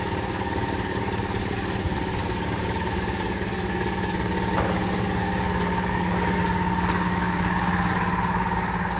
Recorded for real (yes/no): no